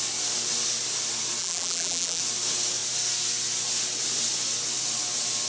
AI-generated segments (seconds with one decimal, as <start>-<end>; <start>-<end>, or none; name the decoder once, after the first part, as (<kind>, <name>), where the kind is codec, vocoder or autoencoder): 1.4-2.2 (vocoder, BigVGAN v2)